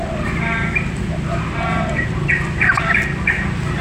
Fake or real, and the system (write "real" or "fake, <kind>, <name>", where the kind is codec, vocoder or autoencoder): real